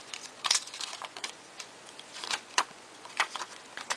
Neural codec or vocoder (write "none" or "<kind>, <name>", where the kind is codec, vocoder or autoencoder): vocoder, Vocos